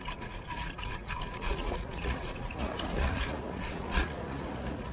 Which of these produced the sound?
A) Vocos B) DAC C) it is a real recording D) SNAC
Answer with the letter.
A